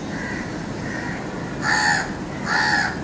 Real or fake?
real